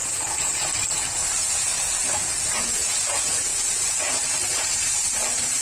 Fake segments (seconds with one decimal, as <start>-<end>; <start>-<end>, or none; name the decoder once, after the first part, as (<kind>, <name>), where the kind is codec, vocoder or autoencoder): 0.0-5.6 (vocoder, Vocos)